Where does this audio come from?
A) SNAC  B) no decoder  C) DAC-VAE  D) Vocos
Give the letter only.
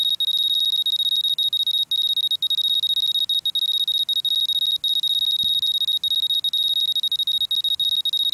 B